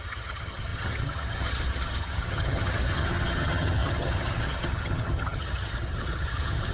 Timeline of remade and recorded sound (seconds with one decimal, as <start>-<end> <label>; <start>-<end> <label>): 0.0-6.7 remade